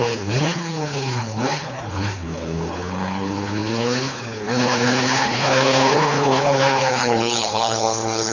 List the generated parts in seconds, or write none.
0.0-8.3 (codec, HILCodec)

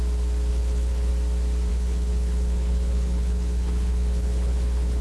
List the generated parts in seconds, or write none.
0.5-1.1 (codec, HILCodec); 1.7-5.0

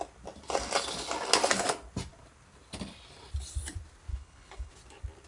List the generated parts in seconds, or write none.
4.1-4.7 (codec, HILCodec)

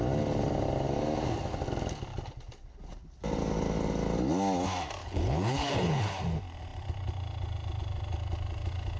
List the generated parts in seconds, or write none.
5.0-6.1 (codec, HILCodec)

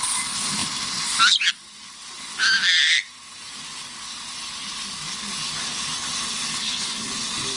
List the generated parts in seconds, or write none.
6.5-7.1 (codec, HILCodec)